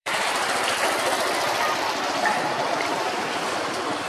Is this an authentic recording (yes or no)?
no